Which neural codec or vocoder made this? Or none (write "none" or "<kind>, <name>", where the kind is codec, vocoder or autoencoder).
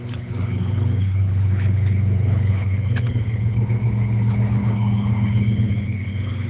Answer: codec, HILCodec